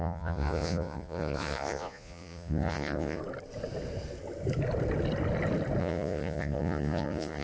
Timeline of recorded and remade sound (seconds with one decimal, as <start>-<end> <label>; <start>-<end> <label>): 0.0-3.2 remade; 3.2-5.8 recorded; 5.8-7.4 remade